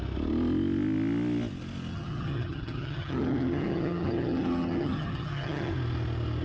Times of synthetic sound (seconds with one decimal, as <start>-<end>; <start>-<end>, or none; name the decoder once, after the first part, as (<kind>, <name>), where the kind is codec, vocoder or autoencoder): 1.9-5.7 (vocoder, HiFi-GAN)